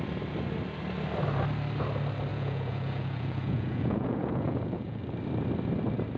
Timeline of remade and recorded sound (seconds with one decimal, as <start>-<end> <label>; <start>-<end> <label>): 0.0-2.3 recorded; 2.3-5.0 remade; 5.0-6.2 recorded